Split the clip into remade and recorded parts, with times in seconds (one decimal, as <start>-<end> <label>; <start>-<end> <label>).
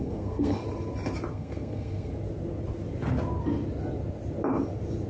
0.0-0.6 remade; 0.6-1.3 recorded; 1.3-2.1 remade; 2.1-5.1 recorded